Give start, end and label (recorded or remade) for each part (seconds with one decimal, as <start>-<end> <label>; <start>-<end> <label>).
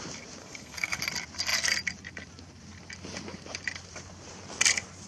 0.0-0.4 recorded; 0.4-1.0 remade; 1.0-5.1 recorded